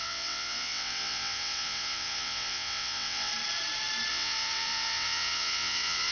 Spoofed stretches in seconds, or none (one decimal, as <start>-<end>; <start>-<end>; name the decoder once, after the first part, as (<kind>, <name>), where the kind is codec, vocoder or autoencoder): 0.0-3.3 (vocoder, WaveNeXt); 4.1-6.1